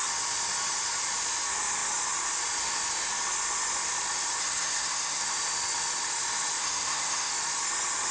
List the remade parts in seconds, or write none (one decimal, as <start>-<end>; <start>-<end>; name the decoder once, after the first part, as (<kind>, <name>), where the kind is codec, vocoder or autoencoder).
4.4-5.2 (codec, SNAC); 6.6-7.3